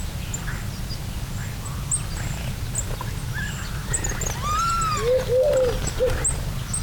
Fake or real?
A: real